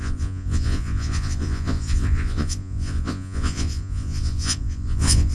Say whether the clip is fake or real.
fake